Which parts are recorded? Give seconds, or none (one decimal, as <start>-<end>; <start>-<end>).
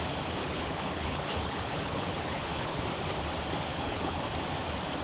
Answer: 0.0-0.4; 2.8-3.7; 4.2-5.0